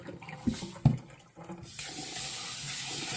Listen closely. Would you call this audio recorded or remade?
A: recorded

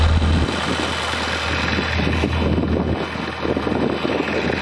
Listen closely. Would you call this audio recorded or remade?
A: recorded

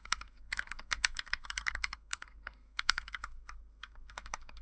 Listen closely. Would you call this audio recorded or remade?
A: remade